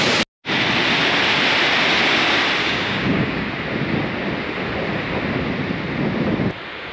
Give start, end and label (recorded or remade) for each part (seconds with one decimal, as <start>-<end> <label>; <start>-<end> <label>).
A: 0.0-2.6 recorded; 2.6-3.5 remade; 3.5-6.9 recorded